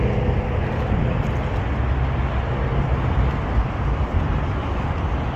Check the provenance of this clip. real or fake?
real